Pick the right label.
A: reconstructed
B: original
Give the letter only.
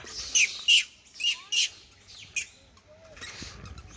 B